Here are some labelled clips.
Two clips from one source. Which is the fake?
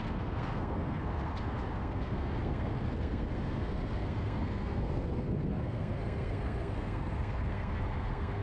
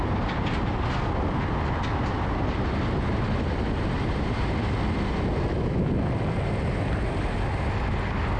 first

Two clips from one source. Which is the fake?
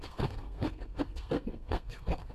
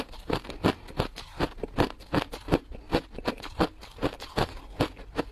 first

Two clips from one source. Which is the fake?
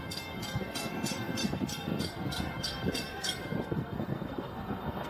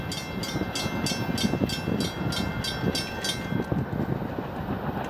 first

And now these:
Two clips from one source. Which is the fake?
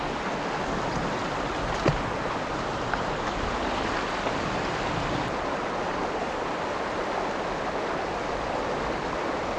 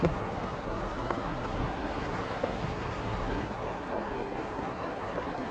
second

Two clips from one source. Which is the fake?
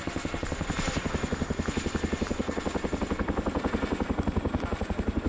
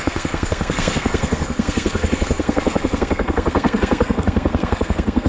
second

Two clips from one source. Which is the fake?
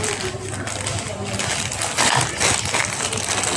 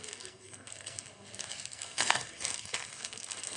second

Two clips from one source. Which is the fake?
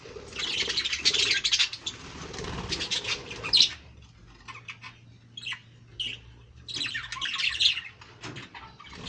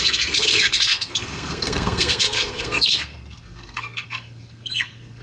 second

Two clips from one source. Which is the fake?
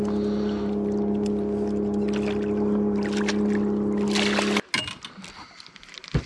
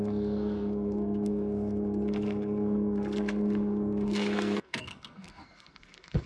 second